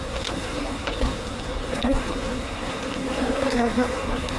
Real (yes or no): no